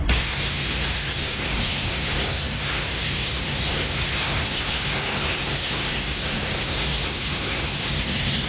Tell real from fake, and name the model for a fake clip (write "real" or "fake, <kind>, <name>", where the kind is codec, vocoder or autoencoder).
fake, codec, SNAC